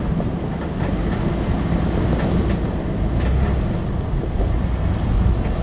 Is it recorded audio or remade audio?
recorded